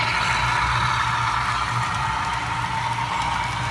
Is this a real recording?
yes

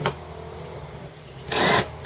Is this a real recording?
yes